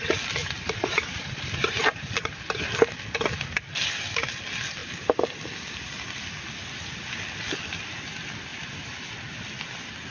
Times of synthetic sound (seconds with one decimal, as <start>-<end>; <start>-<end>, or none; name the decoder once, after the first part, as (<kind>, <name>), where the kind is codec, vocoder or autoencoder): 0.4-2.4 (vocoder, BigVGAN v2); 8.5-9.0